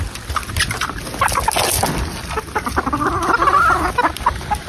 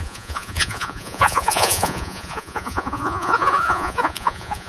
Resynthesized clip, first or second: second